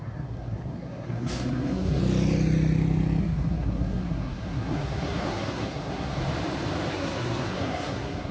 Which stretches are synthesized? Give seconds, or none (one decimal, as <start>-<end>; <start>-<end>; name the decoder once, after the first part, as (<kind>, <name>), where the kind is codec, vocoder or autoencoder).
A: 0.0-2.0 (codec, SNAC); 3.2-6.2; 6.9-8.3